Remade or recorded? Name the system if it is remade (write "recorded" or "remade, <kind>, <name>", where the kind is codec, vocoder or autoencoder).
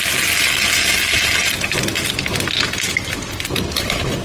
recorded